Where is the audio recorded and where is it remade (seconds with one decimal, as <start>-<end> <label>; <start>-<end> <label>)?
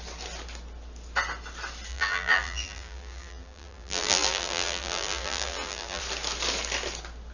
0.0-1.9 recorded; 1.9-6.0 remade; 6.0-7.3 recorded